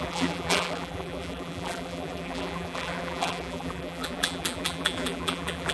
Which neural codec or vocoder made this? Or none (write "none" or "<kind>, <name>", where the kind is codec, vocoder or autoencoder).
vocoder, BigVGAN v2